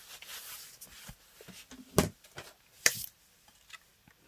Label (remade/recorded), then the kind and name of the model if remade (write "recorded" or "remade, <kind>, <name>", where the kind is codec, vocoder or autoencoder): recorded